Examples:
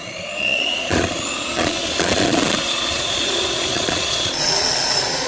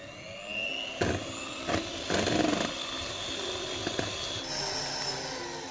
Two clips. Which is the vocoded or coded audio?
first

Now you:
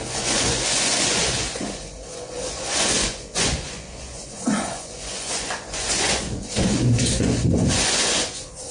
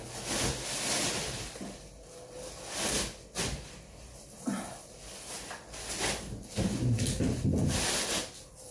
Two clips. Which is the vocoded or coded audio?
first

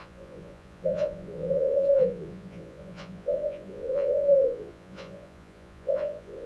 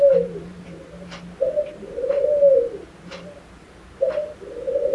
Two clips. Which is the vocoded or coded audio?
first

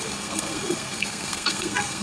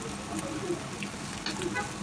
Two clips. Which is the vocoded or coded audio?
first